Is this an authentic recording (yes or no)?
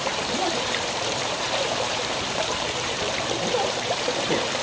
no